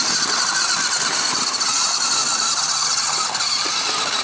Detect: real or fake real